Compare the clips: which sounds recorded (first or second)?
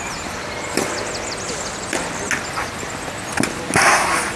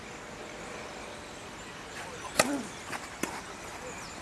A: first